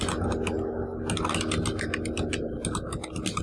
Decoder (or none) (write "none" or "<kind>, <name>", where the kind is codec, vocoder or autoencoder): none